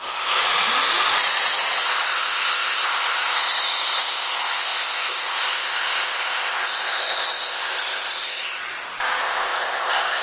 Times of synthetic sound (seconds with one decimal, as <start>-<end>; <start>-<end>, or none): 0.0-0.4; 1.8-8.6; 9.2-10.2